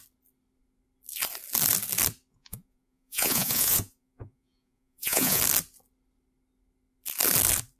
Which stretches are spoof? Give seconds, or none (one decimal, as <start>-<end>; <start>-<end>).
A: 2.3-5.4

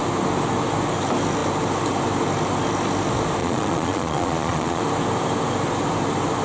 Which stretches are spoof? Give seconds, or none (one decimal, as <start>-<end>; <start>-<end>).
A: 3.4-4.8

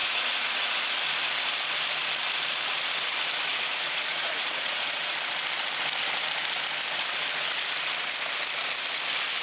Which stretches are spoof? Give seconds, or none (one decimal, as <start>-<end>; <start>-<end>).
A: 0.0-0.9; 3.5-5.1

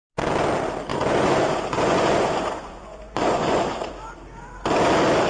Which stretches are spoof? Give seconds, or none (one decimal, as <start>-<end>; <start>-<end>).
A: 0.9-3.9

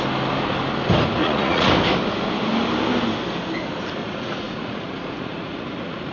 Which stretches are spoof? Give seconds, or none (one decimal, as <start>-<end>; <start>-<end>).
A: 1.2-1.7; 4.0-6.1

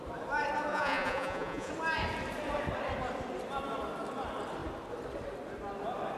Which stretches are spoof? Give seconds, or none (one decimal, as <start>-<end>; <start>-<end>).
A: 0.7-1.7